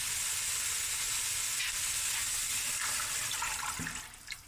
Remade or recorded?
recorded